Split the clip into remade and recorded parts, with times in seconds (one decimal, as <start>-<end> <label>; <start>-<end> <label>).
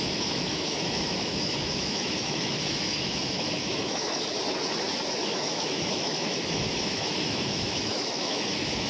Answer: 0.0-4.3 remade; 4.3-5.2 recorded; 5.2-8.9 remade